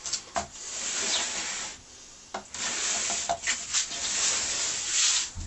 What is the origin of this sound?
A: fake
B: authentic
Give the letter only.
B